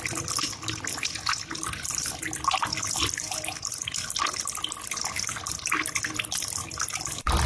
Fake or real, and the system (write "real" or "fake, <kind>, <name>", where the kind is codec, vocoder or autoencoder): real